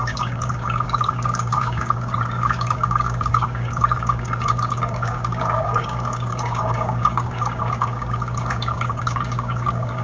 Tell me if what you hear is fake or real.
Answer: fake